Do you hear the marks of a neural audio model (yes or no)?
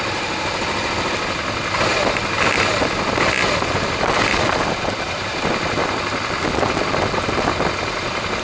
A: no